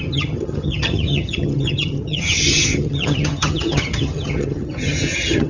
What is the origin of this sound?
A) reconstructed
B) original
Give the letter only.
A